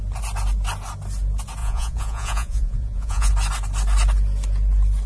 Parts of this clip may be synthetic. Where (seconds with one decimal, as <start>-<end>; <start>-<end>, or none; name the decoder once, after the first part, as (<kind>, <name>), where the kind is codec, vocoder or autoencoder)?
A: 1.6-3.3 (vocoder, Vocos)